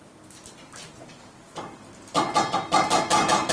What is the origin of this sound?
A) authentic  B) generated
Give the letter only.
A